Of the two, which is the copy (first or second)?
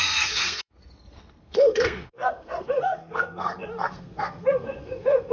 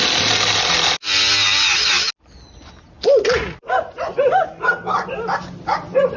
first